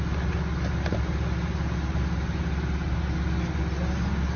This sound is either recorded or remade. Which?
recorded